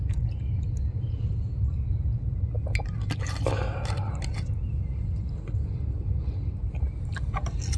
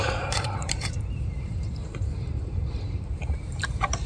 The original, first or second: first